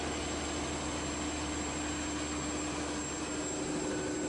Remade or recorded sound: recorded